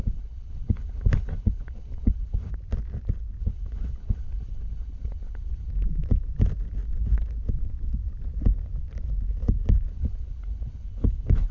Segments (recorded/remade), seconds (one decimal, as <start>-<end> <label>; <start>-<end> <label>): 0.0-2.5 remade; 2.5-3.4 recorded; 3.4-5.7 remade; 5.7-9.9 recorded; 9.9-11.5 remade